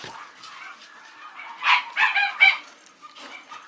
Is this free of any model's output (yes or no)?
yes